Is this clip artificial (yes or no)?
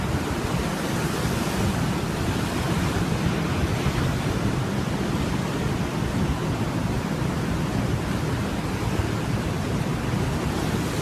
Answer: no